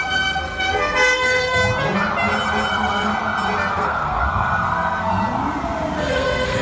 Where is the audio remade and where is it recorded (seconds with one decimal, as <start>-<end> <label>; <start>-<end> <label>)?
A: 0.0-1.6 remade; 1.6-2.7 recorded; 2.7-3.1 remade; 3.1-3.7 recorded; 3.7-5.1 remade; 5.1-6.1 recorded; 6.1-6.6 remade